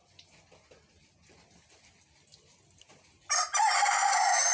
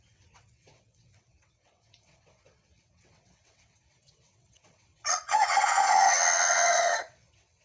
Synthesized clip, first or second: second